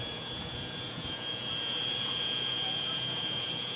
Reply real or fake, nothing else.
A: fake